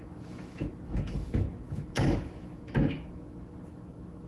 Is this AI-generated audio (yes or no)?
yes